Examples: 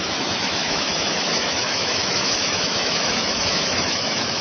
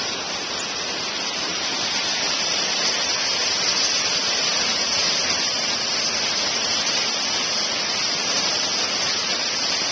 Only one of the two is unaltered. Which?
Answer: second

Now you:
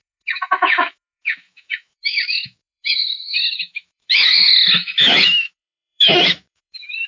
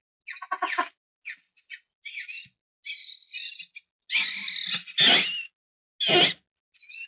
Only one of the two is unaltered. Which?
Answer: second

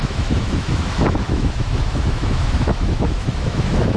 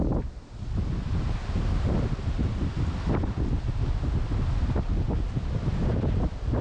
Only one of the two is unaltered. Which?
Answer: second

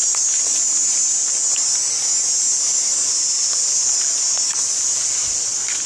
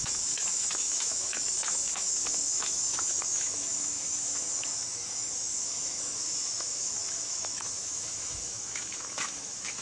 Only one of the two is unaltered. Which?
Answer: first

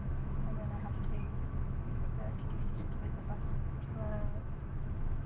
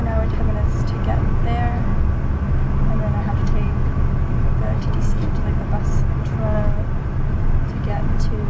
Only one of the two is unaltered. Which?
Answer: second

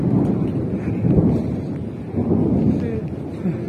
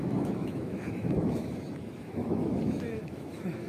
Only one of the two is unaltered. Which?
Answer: first